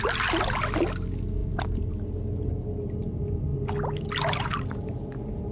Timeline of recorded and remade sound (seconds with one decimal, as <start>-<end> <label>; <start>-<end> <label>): 0.0-5.5 recorded